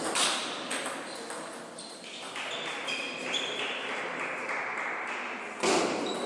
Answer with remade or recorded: recorded